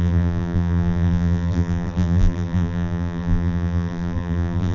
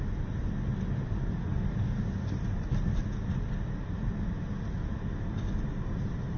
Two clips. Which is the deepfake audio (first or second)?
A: first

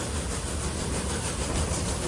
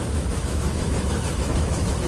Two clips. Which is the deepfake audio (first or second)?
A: second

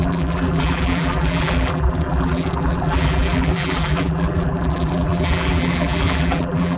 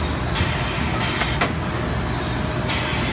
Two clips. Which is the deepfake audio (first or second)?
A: first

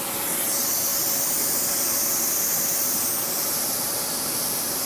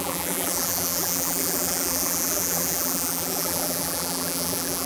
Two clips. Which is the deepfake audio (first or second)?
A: second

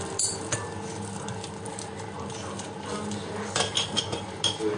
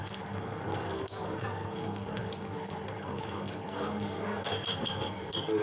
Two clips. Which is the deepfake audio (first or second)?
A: second